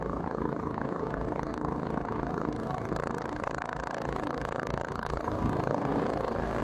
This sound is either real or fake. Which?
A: fake